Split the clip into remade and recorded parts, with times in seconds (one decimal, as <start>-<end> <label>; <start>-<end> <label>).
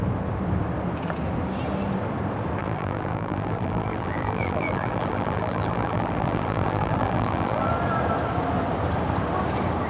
0.0-2.6 recorded; 2.6-7.7 remade; 7.7-9.9 recorded